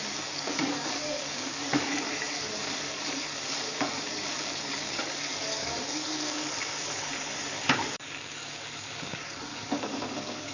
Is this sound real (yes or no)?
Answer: no